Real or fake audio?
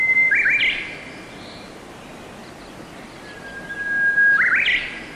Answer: real